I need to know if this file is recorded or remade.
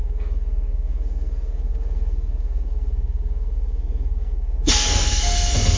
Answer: remade